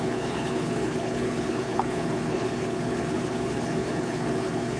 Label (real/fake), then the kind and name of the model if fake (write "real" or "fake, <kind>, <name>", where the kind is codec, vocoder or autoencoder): fake, codec, HILCodec